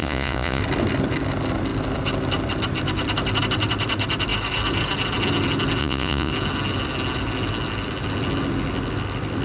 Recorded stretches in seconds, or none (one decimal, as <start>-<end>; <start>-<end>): 0.6-5.8; 6.3-9.4